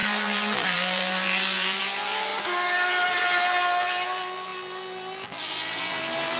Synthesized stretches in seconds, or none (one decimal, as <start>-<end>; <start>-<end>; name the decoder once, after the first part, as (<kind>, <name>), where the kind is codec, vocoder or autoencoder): 0.0-2.3 (vocoder, BigVGAN v2); 3.2-6.4